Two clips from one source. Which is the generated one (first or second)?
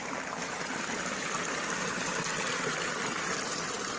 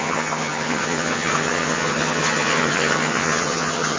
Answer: second